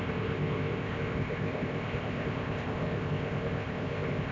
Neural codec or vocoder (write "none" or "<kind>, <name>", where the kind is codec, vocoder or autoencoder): codec, ZipCodec